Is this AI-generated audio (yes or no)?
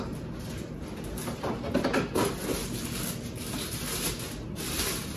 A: no